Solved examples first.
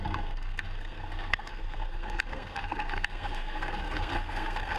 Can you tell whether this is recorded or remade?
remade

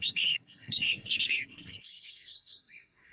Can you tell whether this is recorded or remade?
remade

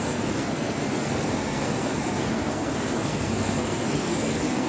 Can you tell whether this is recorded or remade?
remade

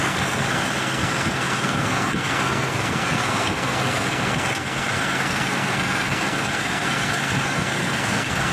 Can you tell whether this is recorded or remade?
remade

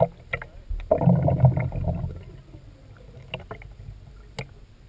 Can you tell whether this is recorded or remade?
recorded